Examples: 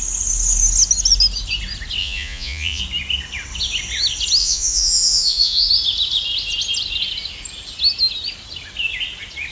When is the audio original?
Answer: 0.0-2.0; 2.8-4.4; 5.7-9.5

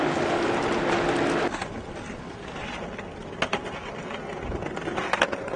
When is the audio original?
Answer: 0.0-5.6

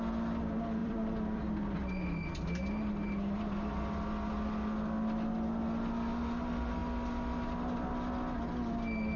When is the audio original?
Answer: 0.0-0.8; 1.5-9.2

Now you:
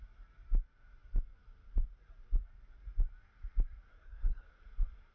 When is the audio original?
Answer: 0.0-3.9; 4.5-5.1